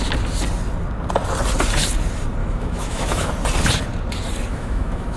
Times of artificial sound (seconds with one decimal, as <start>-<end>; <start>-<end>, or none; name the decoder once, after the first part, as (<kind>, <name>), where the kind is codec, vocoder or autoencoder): 2.4-3.3 (autoencoder, DAC-VAE); 4.5-5.2